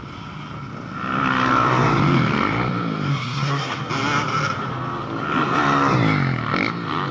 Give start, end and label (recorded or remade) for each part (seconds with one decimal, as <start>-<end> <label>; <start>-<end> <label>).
0.0-3.1 recorded; 3.1-3.9 remade; 3.9-7.1 recorded